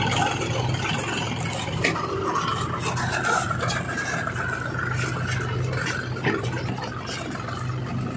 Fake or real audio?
real